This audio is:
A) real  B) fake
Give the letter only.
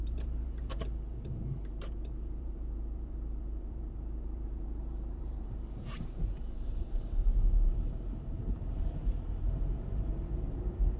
B